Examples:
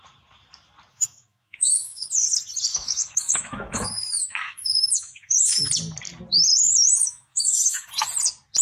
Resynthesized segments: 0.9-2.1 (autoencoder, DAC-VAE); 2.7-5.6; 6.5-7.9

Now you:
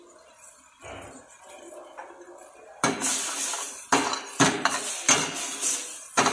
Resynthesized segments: none